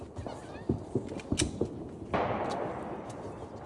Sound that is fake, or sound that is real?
real